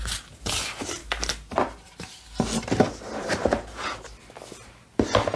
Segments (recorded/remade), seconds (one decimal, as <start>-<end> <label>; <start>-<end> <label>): 0.0-5.4 recorded